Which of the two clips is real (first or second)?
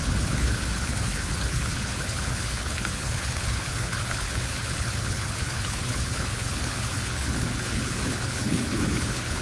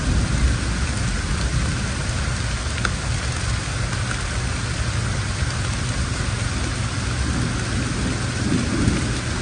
second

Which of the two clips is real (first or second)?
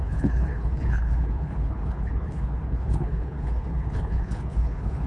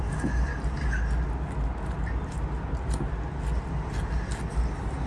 second